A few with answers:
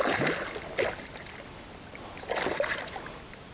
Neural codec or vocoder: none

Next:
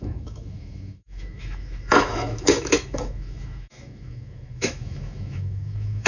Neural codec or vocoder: autoencoder, DAC-VAE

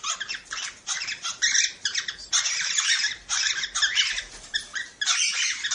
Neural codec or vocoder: none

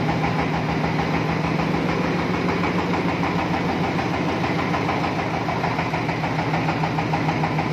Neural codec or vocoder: none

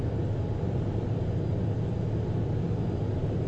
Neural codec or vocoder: none